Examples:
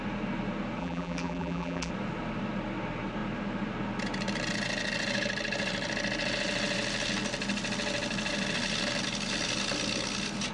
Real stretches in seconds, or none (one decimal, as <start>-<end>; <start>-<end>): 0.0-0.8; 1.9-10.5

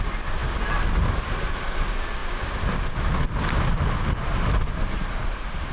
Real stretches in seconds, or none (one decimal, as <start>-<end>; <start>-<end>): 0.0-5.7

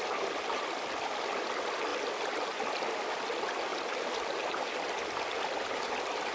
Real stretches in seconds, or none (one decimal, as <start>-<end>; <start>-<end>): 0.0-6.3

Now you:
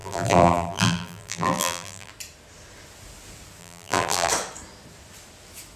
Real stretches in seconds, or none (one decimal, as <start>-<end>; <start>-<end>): 2.1-3.6; 4.3-5.8

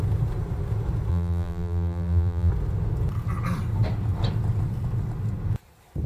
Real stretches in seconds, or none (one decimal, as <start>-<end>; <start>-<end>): 0.0-1.1; 2.5-6.1

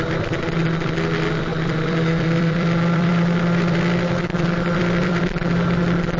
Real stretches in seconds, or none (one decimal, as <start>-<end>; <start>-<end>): 0.0-1.5; 5.2-6.2

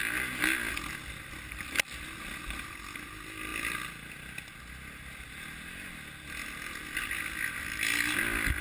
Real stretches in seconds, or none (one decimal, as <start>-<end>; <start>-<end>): 0.0-8.6